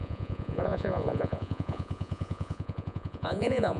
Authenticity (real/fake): fake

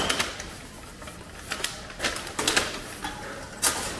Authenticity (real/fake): real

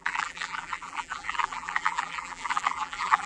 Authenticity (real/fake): fake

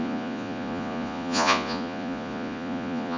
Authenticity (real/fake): fake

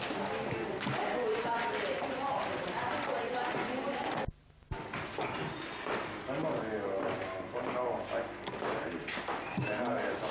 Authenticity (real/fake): real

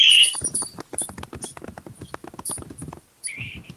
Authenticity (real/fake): real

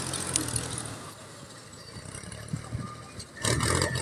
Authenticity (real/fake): real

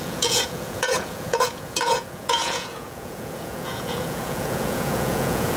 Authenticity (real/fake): fake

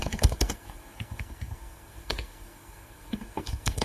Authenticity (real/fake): fake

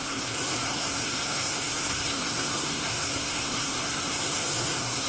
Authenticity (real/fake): fake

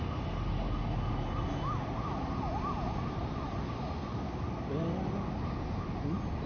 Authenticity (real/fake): real